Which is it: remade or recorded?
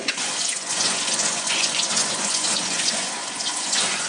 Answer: remade